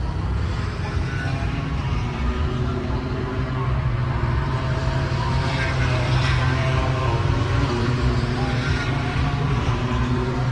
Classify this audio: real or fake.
fake